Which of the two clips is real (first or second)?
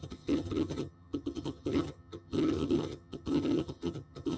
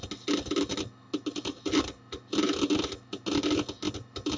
second